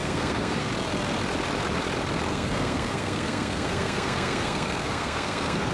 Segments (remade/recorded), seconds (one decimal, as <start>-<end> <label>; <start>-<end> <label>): 0.0-0.7 remade; 0.7-2.3 recorded; 2.3-5.7 remade